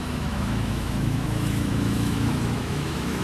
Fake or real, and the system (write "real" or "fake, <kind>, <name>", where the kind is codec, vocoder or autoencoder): fake, autoencoder, DAC-VAE